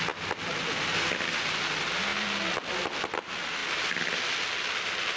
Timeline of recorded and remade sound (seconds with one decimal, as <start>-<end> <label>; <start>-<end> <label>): 0.0-5.2 recorded